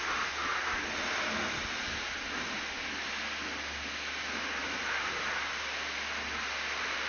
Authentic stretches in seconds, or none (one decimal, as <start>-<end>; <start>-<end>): 0.0-4.6; 5.7-7.1